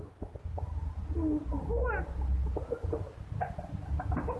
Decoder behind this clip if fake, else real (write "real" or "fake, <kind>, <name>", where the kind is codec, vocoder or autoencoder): real